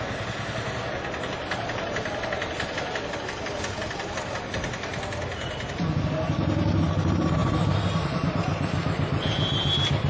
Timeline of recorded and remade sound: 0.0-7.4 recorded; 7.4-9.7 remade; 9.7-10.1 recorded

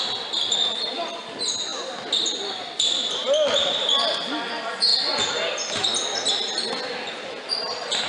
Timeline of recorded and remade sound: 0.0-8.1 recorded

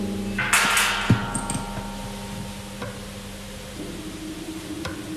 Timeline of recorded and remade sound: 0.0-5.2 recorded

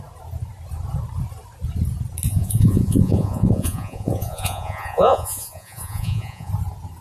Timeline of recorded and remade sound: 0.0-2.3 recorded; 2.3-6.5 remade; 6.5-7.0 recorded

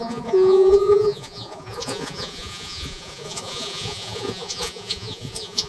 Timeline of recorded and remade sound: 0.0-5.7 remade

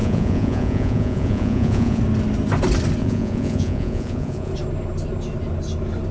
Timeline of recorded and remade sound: 0.0-2.0 remade; 2.0-3.0 recorded; 3.0-4.5 remade; 4.5-6.1 recorded